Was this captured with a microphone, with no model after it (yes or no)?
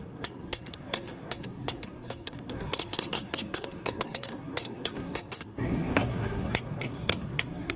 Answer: no